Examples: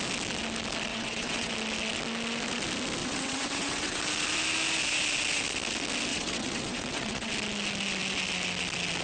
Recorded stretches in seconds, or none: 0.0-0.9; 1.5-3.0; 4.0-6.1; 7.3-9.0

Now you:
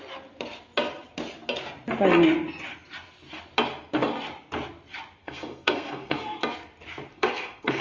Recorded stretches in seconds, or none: 0.0-5.2; 6.4-7.1

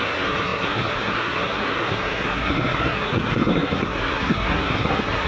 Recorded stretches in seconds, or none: none

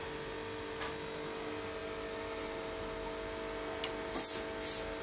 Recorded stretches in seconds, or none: 0.0-5.0

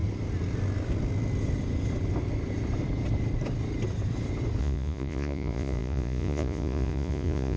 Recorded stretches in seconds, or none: 0.0-4.6

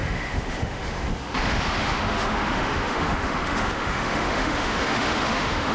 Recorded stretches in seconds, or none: none

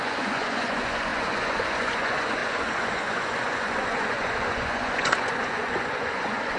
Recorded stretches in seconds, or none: none

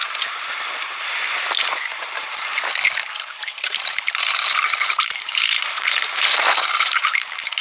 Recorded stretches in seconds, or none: 0.0-1.6; 2.5-3.6